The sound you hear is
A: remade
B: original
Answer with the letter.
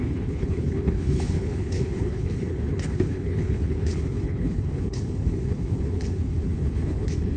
A